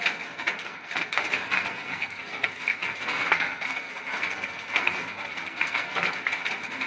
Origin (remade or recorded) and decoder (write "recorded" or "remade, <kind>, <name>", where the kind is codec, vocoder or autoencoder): remade, codec, SNAC